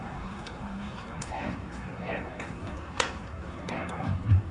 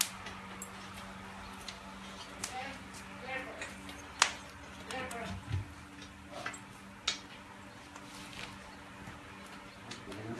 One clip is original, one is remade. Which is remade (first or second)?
first